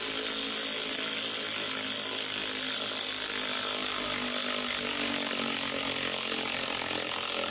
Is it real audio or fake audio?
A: real